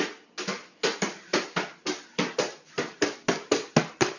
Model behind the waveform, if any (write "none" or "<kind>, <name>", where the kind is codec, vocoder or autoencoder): none